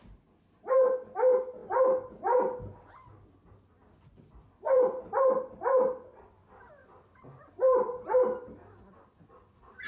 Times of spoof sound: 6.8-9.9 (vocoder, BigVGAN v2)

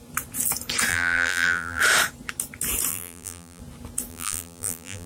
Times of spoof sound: 0.9-1.8 (vocoder, BigVGAN v2); 2.9-3.6; 4.1-5.1

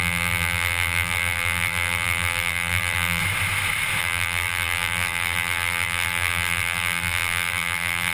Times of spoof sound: 0.0-3.2 (vocoder, BigVGAN v2); 4.0-8.1

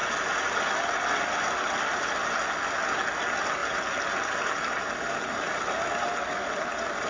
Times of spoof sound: 3.2-7.1 (vocoder, BigVGAN v2)

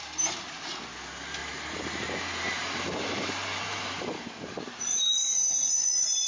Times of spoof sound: 1.4-4.8 (vocoder, BigVGAN v2)

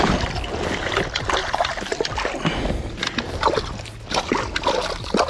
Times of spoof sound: none

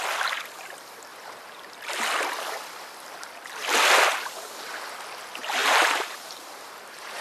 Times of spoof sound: 1.1-1.9 (vocoder, BigVGAN v2); 5.6-7.2